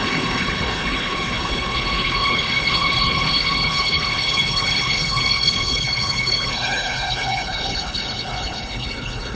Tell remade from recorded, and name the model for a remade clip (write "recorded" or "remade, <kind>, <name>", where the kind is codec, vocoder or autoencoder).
remade, codec, HILCodec